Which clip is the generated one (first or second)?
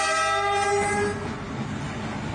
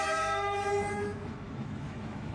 second